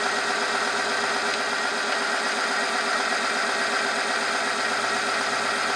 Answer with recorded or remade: recorded